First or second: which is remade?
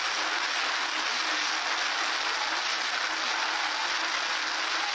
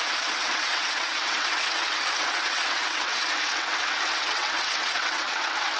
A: second